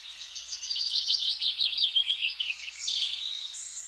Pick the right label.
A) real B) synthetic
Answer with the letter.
B